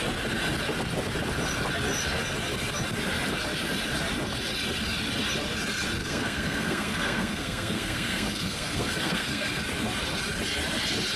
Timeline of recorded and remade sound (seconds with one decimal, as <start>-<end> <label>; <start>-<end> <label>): 0.0-6.0 recorded; 6.0-9.6 remade; 9.6-11.2 recorded